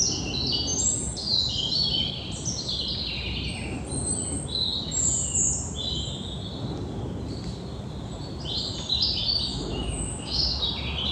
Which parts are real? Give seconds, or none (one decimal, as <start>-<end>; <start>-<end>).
0.0-9.5; 10.6-11.1